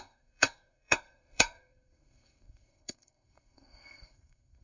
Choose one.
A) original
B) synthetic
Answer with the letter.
B